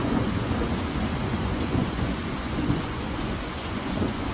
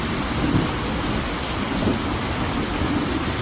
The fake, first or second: first